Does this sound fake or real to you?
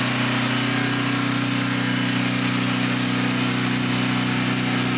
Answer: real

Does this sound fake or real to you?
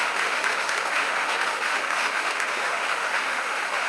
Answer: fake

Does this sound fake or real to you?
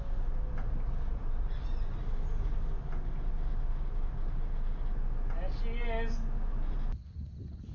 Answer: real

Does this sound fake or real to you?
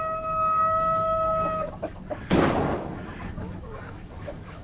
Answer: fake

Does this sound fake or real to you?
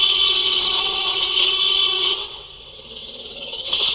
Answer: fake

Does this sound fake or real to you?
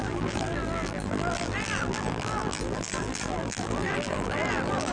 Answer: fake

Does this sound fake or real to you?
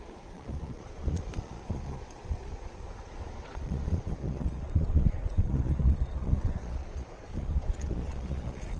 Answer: fake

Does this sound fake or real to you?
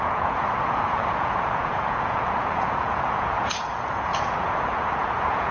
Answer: fake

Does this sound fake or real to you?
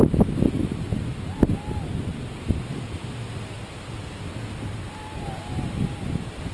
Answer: real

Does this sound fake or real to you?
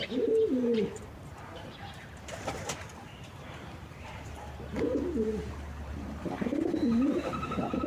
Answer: fake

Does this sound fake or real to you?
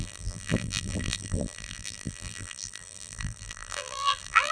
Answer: fake